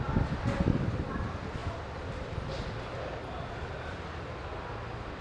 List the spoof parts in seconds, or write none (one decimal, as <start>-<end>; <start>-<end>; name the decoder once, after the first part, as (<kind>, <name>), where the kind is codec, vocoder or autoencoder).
none